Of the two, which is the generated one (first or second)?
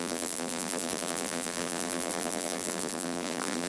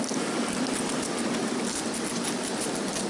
first